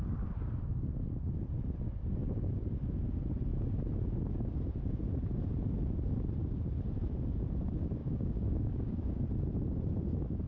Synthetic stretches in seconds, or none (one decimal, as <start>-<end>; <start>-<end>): 8.0-9.2